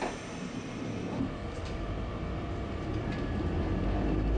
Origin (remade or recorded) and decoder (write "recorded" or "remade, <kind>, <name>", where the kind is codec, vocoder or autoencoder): recorded